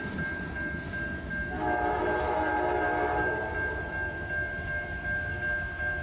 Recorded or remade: recorded